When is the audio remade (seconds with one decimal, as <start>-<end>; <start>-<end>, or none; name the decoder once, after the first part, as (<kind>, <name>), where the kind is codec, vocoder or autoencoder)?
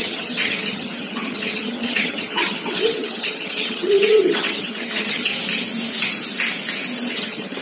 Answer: 0.0-5.3 (vocoder, HiFi-GAN); 7.1-7.6